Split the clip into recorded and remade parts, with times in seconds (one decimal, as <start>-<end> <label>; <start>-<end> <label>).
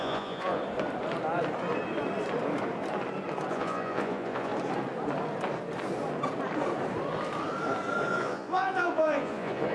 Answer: 0.0-0.6 remade; 0.6-3.5 recorded; 3.5-4.5 remade; 4.5-8.1 recorded; 8.1-9.7 remade